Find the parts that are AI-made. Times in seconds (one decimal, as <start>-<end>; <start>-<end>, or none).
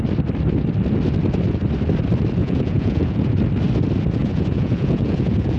2.4-3.3; 4.2-5.6